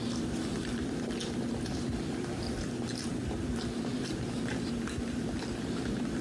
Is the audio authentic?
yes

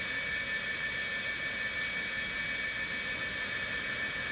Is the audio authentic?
yes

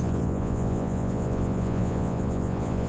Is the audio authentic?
no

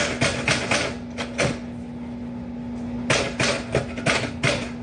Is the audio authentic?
yes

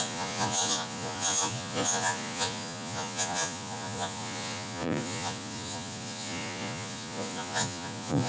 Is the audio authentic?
no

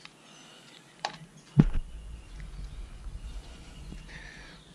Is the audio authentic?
no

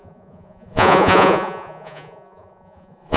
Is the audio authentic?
no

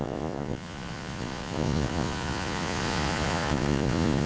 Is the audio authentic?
no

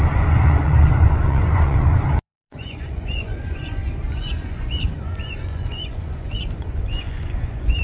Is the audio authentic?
no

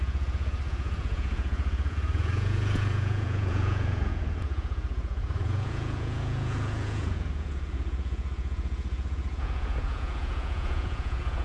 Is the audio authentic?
no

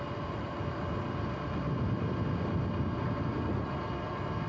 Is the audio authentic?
yes